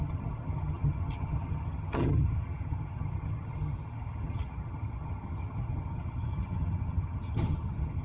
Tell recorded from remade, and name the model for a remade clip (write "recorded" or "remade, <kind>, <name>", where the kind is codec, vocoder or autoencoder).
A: remade, vocoder, HiFi-GAN